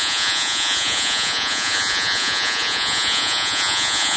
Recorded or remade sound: remade